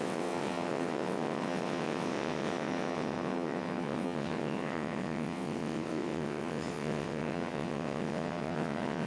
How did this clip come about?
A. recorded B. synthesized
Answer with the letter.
B